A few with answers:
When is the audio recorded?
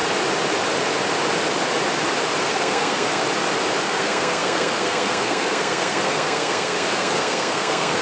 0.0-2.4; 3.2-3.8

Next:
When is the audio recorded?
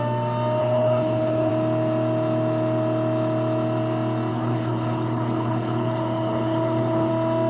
0.0-0.6; 1.5-4.3; 7.1-7.5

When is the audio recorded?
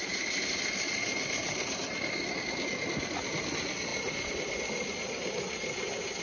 0.0-6.2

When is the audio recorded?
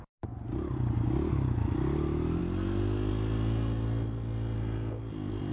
0.0-5.5